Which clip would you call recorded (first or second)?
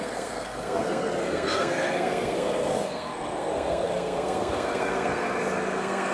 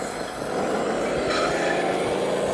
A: second